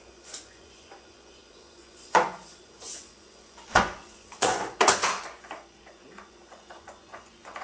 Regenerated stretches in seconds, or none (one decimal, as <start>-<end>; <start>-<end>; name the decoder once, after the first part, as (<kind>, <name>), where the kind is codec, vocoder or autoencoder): 0.0-7.6 (vocoder, Vocos)